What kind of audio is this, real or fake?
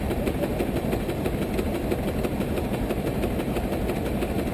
real